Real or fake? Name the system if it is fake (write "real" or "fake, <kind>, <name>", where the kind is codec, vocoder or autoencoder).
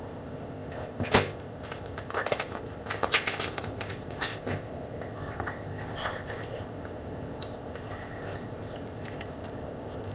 fake, codec, ZipCodec